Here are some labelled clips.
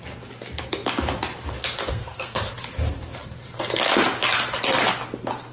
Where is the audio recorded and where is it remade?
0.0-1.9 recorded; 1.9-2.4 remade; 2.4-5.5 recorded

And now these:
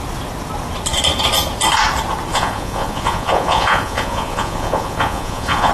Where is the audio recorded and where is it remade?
0.0-2.3 recorded; 2.3-5.7 remade

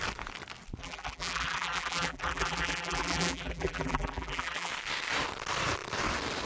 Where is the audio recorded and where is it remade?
0.0-0.8 recorded; 0.8-4.7 remade; 4.7-6.5 recorded

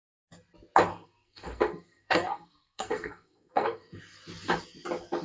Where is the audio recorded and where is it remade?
0.0-0.9 recorded; 0.9-4.0 remade; 4.0-5.2 recorded